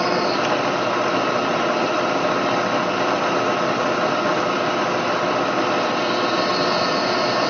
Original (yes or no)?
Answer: yes